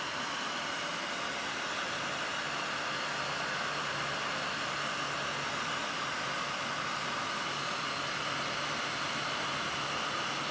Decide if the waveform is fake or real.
real